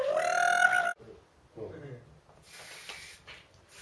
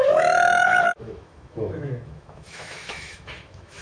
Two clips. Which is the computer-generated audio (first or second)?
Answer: second